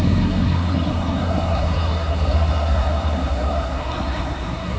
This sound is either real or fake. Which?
fake